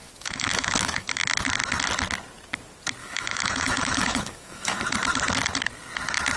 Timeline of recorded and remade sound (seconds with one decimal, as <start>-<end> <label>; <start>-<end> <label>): 0.0-1.2 remade; 1.2-3.0 recorded; 3.0-4.8 remade; 4.8-6.4 recorded